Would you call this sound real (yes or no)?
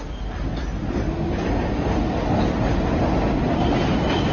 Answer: yes